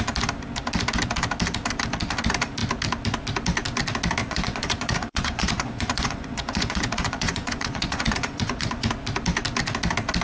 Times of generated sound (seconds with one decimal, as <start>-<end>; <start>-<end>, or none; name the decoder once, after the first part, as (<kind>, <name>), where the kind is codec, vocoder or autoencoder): 4.2-8.9 (vocoder, Vocos)